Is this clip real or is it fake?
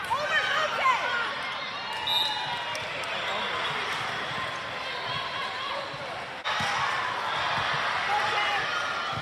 real